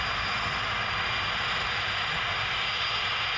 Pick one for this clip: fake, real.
real